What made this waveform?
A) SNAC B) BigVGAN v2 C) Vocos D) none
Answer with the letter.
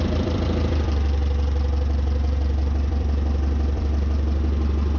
B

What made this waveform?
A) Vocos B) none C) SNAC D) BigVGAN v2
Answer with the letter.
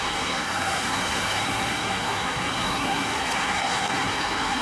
C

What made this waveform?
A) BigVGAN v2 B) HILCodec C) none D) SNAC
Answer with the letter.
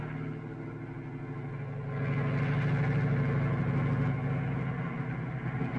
C